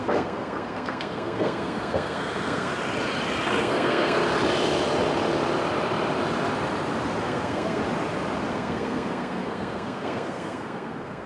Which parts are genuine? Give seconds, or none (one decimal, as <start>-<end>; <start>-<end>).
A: 2.7-3.6; 4.2-7.2; 7.8-8.5